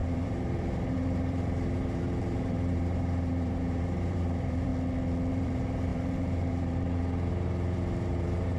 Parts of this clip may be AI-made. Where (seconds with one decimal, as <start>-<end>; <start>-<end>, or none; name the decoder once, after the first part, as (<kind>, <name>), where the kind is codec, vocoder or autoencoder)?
0.0-4.7 (vocoder, BigVGAN v2); 5.3-8.6